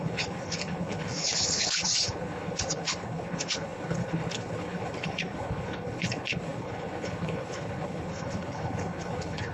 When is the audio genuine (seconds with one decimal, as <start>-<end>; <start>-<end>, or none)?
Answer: none